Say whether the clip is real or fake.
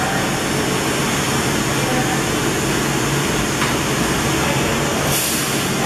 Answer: real